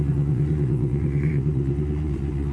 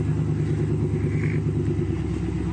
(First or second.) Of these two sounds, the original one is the second